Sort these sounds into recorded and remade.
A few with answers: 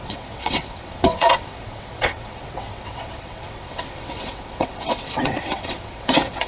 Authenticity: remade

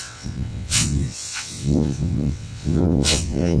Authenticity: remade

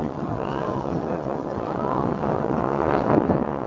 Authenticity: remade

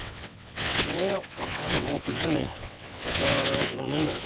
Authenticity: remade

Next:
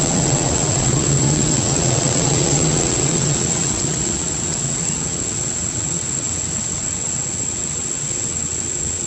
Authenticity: remade